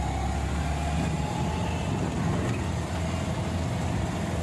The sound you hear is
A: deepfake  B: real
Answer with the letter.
B